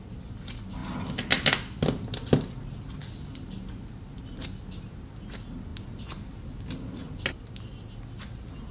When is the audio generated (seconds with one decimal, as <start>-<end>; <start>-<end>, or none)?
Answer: none